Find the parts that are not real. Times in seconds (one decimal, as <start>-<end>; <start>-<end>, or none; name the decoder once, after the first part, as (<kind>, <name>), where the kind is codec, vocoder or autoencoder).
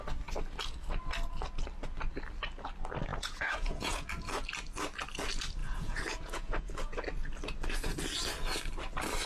3.1-4.1 (vocoder, Vocos); 5.6-6.7